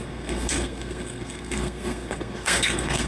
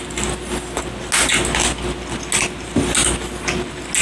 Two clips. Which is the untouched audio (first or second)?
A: second